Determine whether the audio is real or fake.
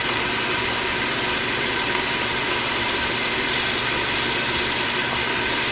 real